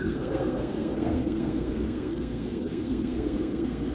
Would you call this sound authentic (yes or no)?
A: no